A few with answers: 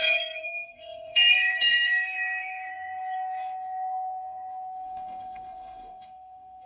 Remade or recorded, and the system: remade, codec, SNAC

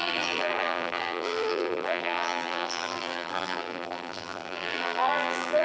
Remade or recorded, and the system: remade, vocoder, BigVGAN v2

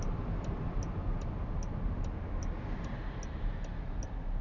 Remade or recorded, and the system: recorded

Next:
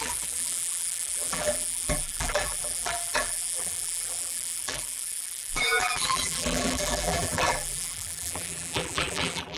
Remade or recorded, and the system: remade, vocoder, BigVGAN v2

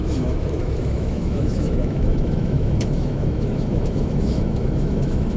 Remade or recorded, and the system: remade, autoencoder, DAC-VAE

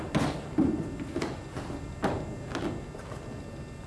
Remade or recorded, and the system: recorded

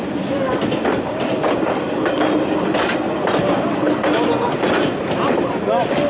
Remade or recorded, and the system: recorded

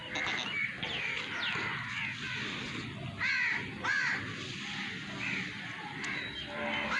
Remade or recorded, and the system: recorded